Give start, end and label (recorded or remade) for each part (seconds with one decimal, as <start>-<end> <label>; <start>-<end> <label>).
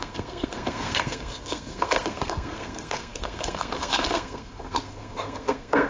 0.0-5.9 remade